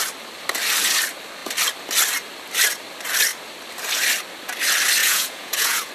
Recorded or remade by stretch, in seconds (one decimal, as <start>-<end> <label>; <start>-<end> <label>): 0.0-5.0 recorded; 5.0-5.9 remade